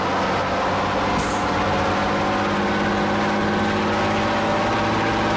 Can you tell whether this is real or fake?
real